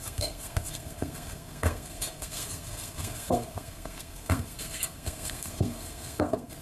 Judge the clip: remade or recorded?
remade